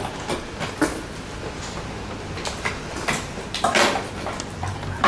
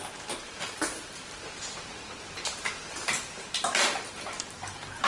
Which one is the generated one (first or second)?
second